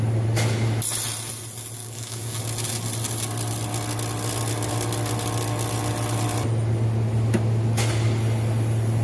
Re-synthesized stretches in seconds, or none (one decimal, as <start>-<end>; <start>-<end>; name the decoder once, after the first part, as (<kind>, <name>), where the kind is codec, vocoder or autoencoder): 1.8-2.4 (codec, DAC)